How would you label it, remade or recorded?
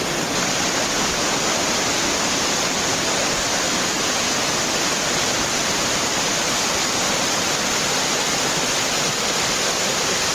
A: recorded